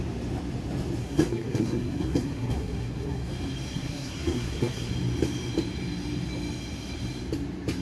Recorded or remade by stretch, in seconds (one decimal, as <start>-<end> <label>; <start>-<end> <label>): 0.0-1.0 recorded; 1.0-3.3 remade; 3.3-3.7 recorded; 3.7-4.9 remade; 4.9-7.8 recorded